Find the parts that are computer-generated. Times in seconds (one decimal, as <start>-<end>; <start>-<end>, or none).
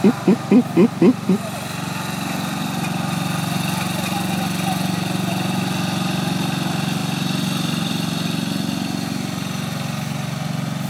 none